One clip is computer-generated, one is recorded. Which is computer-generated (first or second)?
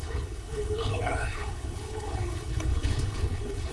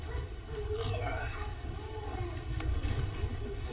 first